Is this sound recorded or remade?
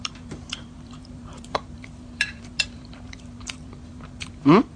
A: remade